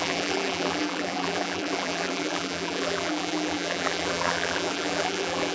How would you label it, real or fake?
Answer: fake